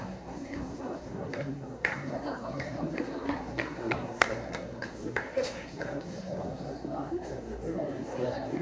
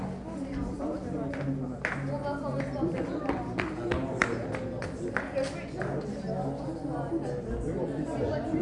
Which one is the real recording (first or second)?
second